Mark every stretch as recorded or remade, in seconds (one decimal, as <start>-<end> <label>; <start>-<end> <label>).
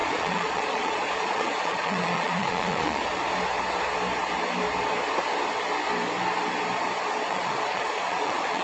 0.0-3.0 remade; 3.0-7.3 recorded; 7.3-8.6 remade